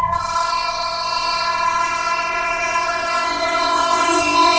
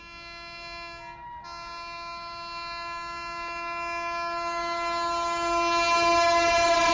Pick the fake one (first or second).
first